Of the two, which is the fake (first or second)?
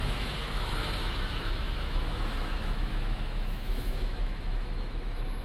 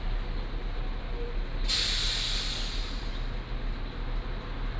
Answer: first